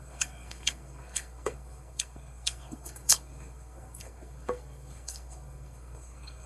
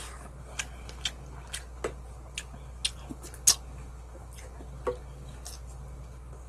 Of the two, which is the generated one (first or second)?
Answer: first